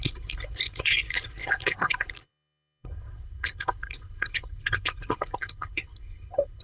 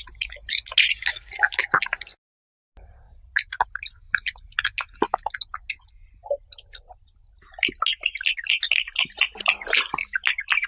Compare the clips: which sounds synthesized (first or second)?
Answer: first